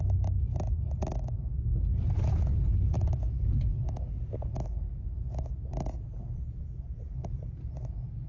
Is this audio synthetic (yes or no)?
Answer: no